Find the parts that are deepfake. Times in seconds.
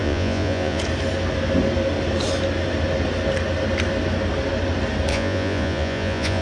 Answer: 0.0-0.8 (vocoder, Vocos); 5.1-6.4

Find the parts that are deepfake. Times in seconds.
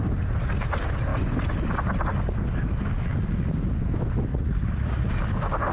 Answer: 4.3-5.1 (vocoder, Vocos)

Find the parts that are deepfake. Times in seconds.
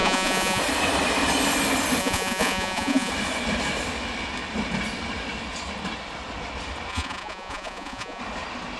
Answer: 0.0-0.6 (vocoder, Vocos); 2.0-3.1; 6.9-8.2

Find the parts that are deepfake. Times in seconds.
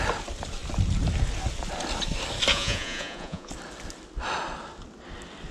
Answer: 2.5-3.5 (vocoder, Vocos)